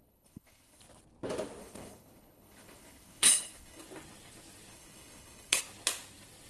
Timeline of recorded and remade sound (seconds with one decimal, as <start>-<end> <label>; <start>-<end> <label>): 0.0-0.8 remade; 0.8-1.6 recorded; 1.6-3.8 remade; 3.8-4.7 recorded; 4.7-5.6 remade; 5.6-6.5 recorded